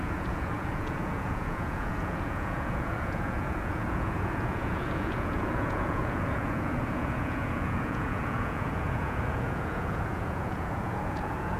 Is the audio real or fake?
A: fake